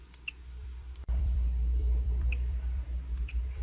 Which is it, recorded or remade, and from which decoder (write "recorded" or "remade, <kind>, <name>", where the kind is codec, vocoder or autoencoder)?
remade, vocoder, BigVGAN v2